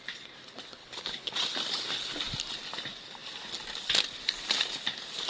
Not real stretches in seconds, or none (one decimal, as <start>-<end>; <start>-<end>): 0.8-1.3